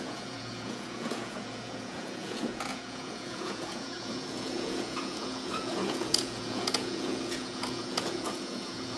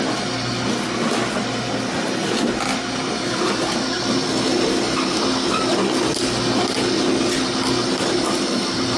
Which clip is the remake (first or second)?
first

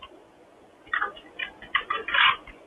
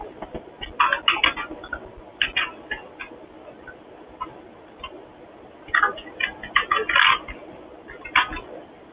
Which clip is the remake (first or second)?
first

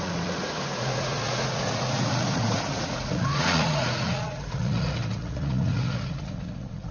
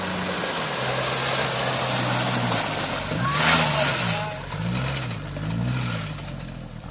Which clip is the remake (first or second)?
first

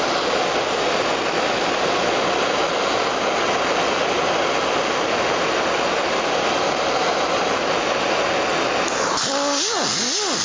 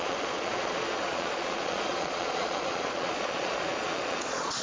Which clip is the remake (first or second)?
second